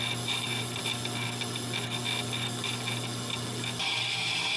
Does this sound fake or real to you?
real